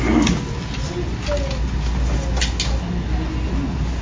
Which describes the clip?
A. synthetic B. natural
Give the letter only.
B